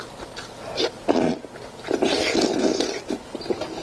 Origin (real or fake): real